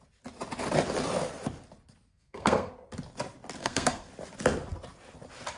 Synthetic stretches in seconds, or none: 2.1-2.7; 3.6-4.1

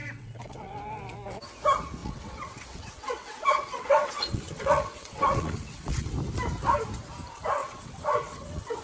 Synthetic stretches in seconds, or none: 0.0-0.8; 2.0-6.1; 7.6-8.8

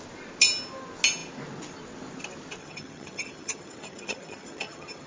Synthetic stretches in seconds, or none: 2.6-5.1

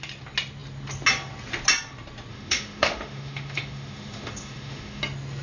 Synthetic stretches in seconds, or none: 2.3-5.0

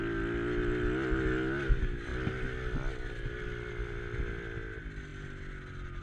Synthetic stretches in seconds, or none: none

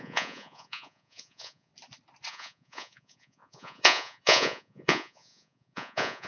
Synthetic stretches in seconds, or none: 0.0-1.7; 2.3-6.3

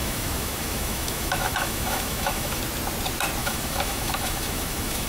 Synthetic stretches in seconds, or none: 0.0-2.6; 3.4-5.1

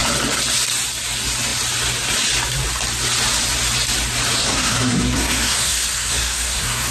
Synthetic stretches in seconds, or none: 4.4-6.9